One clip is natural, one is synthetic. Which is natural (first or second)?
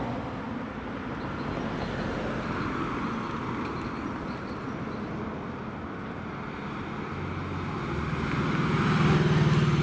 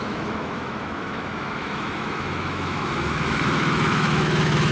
first